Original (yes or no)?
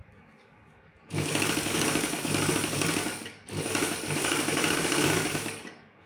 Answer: no